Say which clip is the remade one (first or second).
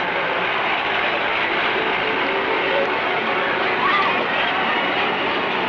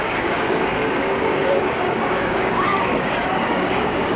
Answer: second